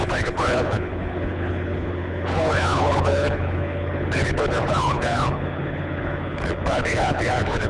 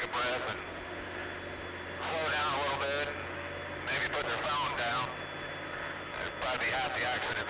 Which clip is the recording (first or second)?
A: second